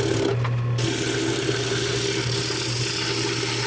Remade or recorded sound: recorded